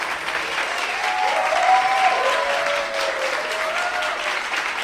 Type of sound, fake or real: real